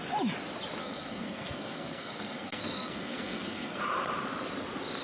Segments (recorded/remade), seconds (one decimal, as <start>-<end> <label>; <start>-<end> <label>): 0.0-0.8 recorded; 0.8-3.8 remade; 3.8-5.0 recorded